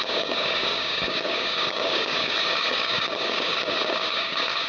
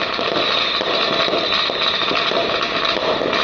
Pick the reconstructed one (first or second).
first